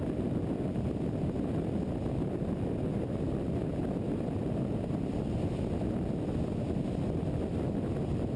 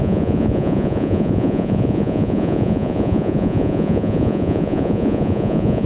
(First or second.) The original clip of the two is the first